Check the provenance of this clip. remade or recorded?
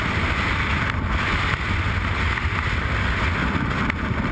recorded